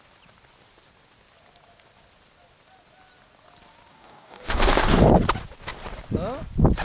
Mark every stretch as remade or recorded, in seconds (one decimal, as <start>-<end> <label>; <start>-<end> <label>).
0.0-3.9 recorded; 3.9-5.1 remade; 5.1-6.8 recorded